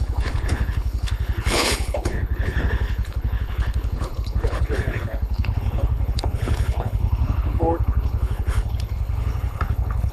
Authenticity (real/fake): fake